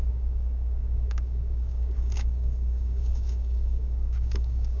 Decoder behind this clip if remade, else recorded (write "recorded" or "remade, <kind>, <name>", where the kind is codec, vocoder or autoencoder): remade, codec, DAC